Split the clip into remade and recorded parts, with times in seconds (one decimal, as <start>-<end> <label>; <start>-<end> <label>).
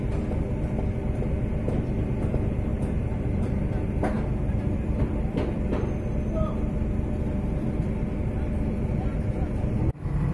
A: 0.0-2.7 recorded; 2.7-3.9 remade; 3.9-4.4 recorded; 4.4-7.1 remade; 7.1-10.3 recorded